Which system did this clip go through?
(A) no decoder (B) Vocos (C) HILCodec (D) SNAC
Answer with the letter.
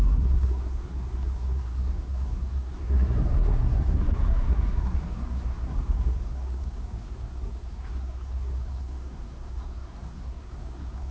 D